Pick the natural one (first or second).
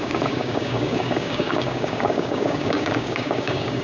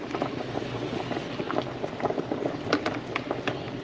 second